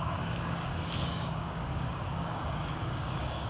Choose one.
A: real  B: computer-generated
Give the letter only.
B